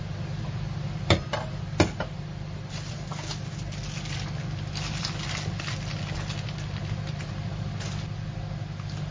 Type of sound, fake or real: real